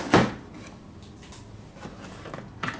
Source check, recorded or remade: recorded